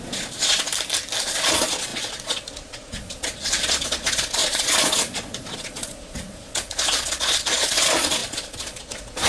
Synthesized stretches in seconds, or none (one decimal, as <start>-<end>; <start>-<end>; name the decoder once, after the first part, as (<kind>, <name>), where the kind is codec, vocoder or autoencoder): 0.0-0.7 (vocoder, Vocos); 1.2-9.3